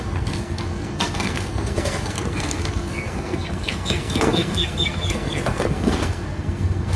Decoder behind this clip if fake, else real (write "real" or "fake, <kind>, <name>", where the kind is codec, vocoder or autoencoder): fake, codec, SNAC